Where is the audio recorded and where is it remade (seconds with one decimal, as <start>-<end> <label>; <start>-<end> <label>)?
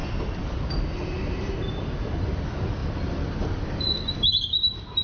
0.0-2.8 recorded; 2.8-3.8 remade; 3.8-5.0 recorded